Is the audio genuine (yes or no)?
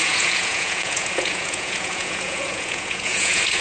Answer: no